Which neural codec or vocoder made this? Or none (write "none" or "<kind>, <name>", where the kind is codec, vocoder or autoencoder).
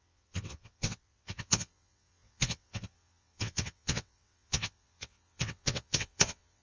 vocoder, WaveNeXt